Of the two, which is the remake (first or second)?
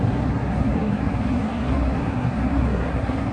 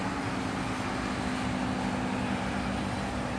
first